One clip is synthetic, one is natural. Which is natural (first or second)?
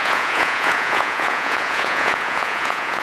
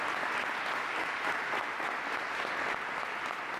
second